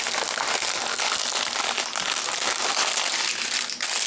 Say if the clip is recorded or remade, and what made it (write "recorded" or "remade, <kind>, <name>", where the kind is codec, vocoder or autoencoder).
recorded